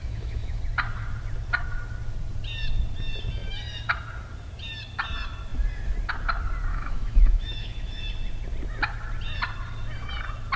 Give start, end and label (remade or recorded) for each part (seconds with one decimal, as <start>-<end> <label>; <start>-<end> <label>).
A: 0.0-0.6 remade; 0.6-6.7 recorded; 6.7-8.1 remade; 8.1-10.6 recorded